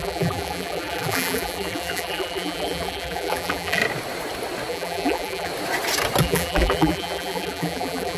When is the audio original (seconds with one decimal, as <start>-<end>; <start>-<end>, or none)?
3.8-4.7; 5.5-6.2